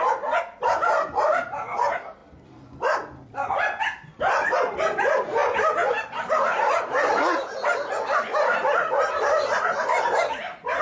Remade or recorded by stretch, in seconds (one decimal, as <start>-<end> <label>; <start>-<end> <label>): 0.0-10.8 recorded